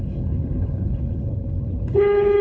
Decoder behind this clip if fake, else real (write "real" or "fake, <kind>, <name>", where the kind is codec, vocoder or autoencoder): fake, codec, HILCodec